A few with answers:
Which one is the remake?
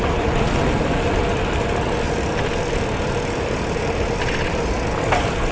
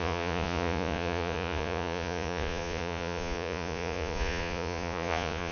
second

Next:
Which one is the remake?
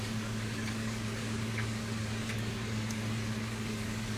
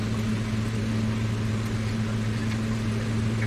first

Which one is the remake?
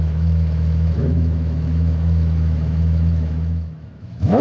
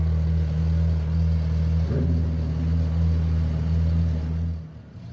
first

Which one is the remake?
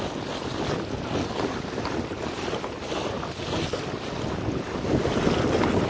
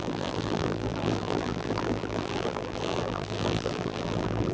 second